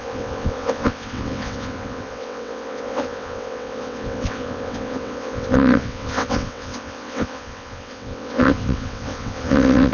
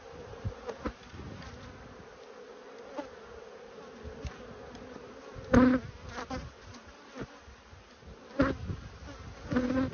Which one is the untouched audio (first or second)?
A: second